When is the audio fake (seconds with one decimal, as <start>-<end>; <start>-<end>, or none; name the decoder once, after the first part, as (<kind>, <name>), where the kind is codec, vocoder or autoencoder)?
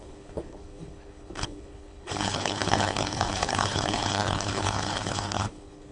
0.0-5.9 (codec, HILCodec)